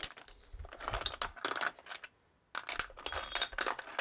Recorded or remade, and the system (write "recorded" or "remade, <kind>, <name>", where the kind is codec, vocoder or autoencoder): recorded